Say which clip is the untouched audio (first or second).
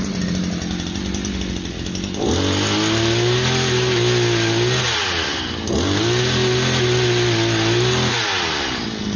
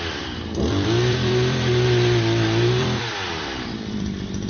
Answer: first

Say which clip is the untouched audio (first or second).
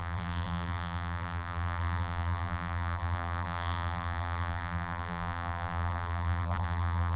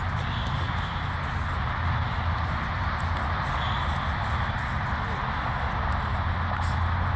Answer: second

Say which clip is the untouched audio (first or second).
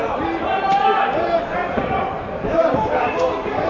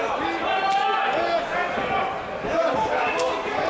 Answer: second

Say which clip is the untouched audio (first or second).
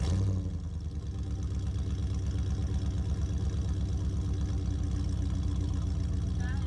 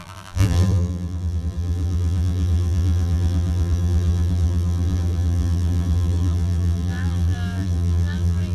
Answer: first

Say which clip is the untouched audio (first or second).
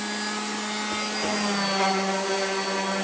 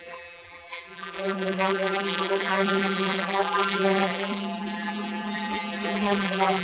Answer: first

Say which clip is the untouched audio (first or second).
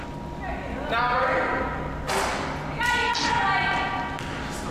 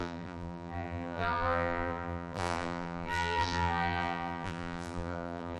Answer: first